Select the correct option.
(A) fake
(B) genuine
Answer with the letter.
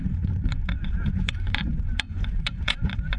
A